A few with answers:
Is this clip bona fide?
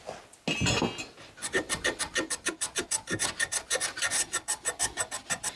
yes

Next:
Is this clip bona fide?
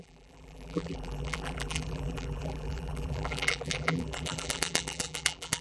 no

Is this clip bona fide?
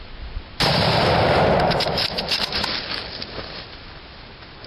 yes